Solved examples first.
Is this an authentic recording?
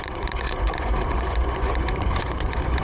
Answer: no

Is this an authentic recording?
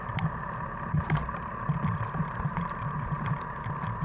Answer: yes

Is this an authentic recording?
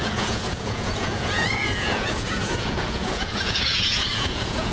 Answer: no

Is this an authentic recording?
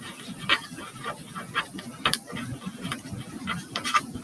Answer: yes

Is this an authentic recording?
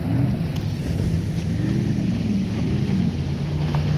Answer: yes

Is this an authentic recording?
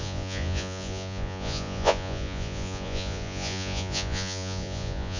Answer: no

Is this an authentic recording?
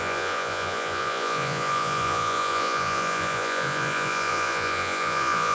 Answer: no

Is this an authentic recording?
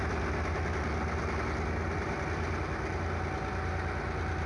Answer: yes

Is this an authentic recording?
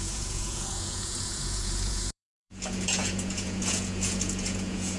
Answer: no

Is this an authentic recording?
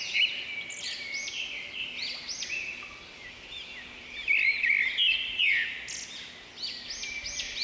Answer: yes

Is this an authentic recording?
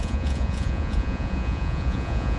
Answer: no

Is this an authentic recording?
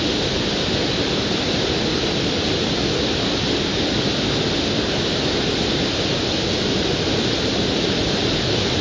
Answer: yes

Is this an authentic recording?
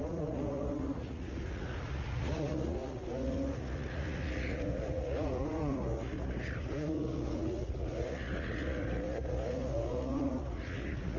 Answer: no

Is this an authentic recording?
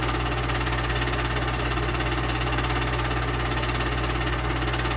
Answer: yes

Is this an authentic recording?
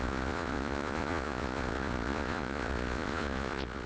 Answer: no